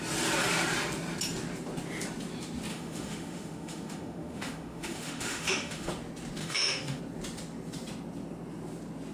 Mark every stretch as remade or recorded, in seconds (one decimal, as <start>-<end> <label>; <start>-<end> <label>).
0.0-2.7 recorded; 2.7-5.9 remade; 5.9-6.4 recorded; 6.4-7.0 remade; 7.0-9.1 recorded